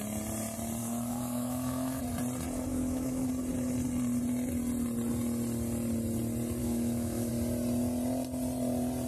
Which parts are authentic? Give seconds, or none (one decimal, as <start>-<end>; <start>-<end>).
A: 0.0-0.8; 2.0-2.7; 3.3-6.6; 7.3-9.1